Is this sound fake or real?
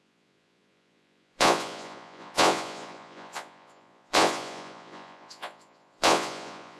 fake